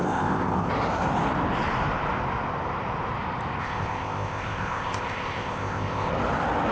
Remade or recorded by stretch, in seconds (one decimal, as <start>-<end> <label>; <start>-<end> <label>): 0.0-0.7 remade; 0.7-3.6 recorded; 3.6-6.1 remade; 6.1-6.7 recorded